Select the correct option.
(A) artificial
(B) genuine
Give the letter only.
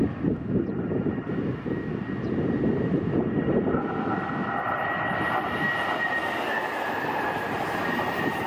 B